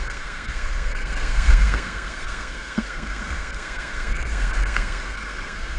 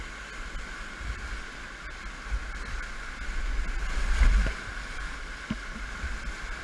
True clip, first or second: second